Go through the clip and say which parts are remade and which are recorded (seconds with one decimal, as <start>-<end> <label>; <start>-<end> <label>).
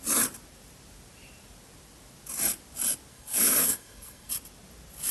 0.0-3.1 recorded; 3.1-4.3 remade; 4.3-5.1 recorded